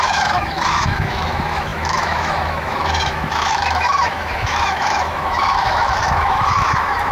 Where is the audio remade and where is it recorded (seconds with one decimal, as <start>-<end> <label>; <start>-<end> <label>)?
0.0-7.1 remade